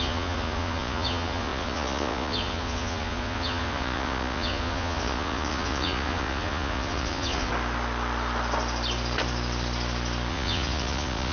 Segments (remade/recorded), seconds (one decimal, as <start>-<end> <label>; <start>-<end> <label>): 0.0-7.5 remade; 7.5-10.3 recorded; 10.3-11.3 remade